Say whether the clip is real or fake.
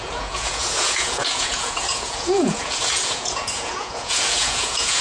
fake